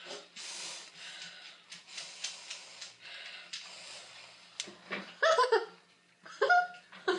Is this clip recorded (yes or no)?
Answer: yes